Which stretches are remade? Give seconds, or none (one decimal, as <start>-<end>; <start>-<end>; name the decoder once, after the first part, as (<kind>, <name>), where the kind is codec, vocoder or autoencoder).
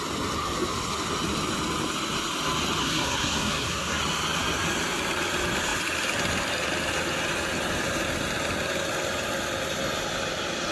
2.8-4.0 (codec, SNAC)